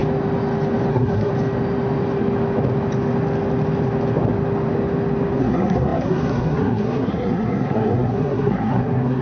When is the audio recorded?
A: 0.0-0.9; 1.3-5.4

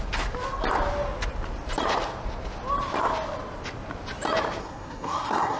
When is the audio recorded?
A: 0.0-4.6

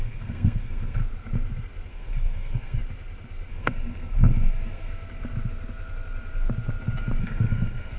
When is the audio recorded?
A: 1.0-1.9; 2.8-3.5; 4.9-7.2